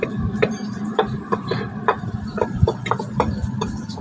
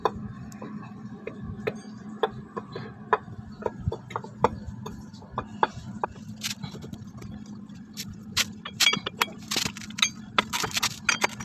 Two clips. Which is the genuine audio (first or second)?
second